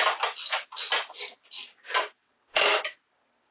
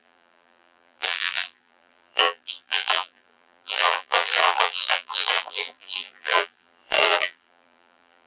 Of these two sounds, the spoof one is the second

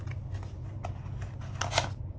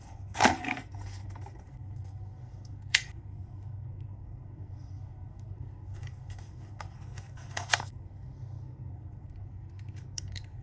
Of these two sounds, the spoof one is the second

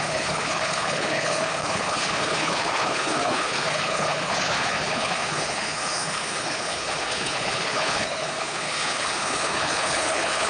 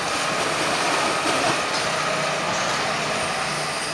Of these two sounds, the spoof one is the first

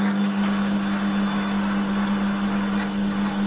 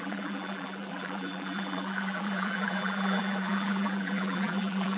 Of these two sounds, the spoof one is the second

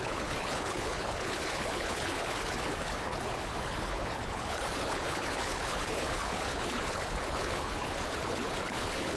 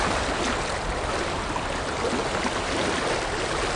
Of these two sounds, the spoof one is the first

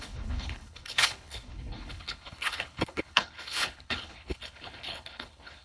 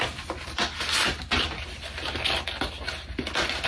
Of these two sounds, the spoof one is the first